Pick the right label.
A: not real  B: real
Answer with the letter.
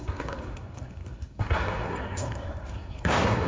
A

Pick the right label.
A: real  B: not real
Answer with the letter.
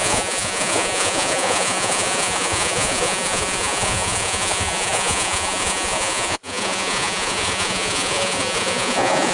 B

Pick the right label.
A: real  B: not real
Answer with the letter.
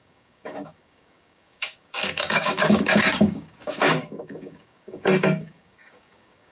B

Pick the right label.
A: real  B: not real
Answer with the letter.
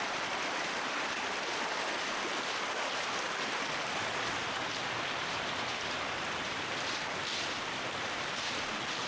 A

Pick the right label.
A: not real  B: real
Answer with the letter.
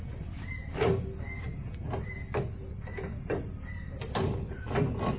B